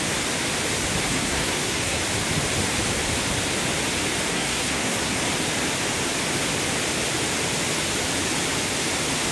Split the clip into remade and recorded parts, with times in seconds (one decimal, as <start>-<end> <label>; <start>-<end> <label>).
0.0-1.1 recorded; 1.1-2.0 remade; 2.0-4.3 recorded; 4.3-5.2 remade; 5.2-9.3 recorded